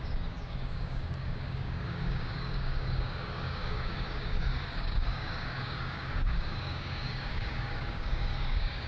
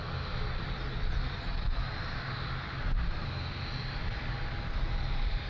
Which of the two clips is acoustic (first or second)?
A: second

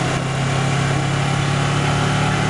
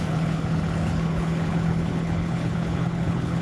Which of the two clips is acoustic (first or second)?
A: first